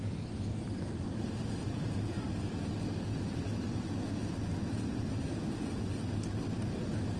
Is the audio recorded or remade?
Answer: recorded